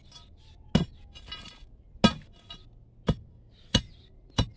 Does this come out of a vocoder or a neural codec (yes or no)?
no